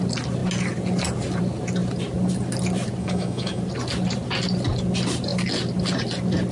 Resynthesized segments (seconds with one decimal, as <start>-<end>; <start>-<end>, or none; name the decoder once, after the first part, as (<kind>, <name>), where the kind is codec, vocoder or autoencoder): 3.0-3.6 (autoencoder, DAC-VAE)